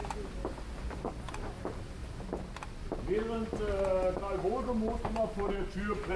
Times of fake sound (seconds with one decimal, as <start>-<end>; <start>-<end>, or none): none